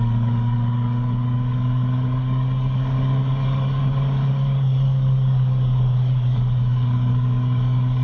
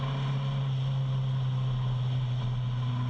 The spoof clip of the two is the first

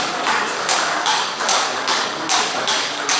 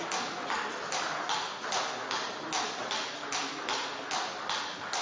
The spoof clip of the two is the first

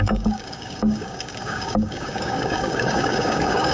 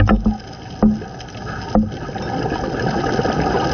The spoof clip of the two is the first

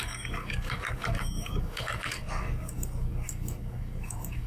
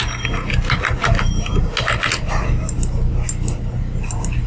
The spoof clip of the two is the first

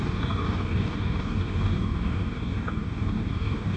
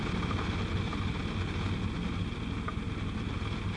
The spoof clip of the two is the first